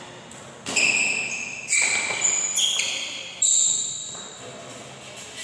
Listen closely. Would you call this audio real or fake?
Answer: real